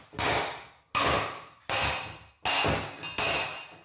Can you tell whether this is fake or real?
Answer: real